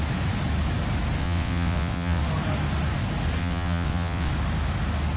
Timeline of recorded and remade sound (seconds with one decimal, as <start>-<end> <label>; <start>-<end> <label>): 0.0-1.2 recorded; 1.2-2.2 remade; 2.2-3.4 recorded; 3.4-4.3 remade; 4.3-5.2 recorded